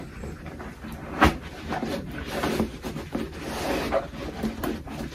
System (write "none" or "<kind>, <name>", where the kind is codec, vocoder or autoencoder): none